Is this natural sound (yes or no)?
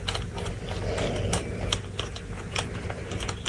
yes